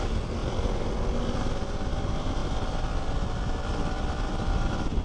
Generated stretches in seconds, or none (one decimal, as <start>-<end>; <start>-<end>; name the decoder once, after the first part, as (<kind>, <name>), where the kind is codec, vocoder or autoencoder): 0.4-1.2 (vocoder, BigVGAN v2); 2.4-3.1; 3.7-5.0